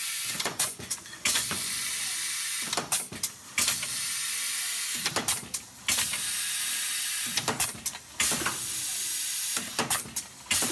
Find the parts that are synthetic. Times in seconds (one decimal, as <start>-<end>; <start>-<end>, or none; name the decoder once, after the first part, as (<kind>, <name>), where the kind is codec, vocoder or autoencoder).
0.0-1.9 (vocoder, Vocos)